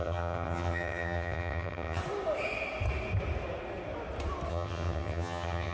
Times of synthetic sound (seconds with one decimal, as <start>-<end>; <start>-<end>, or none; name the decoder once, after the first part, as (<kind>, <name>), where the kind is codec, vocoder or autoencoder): 0.0-2.0 (vocoder, HiFi-GAN); 4.5-5.7